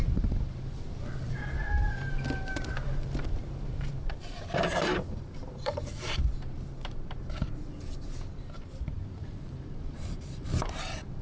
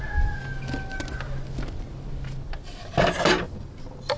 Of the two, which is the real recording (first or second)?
second